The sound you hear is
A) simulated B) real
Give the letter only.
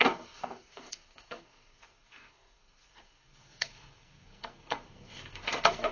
A